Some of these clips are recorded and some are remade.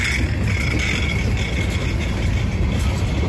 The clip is recorded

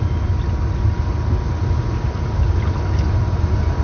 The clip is recorded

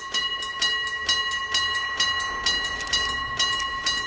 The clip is recorded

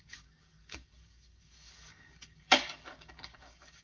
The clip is remade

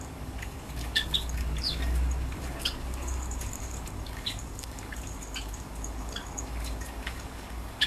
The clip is remade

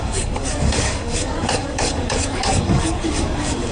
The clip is remade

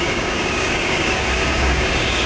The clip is remade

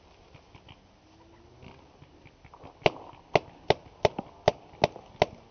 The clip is recorded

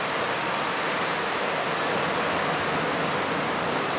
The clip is recorded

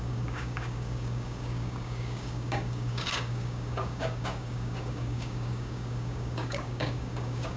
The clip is remade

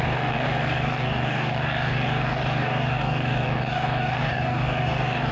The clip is remade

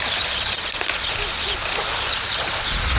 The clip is recorded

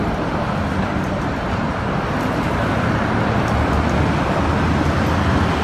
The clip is recorded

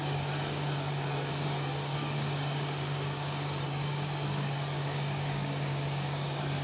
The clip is remade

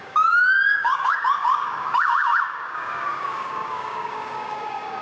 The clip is remade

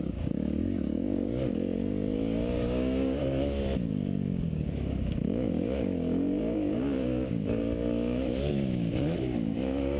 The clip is remade